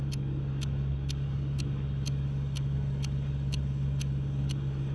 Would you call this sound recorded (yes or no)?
no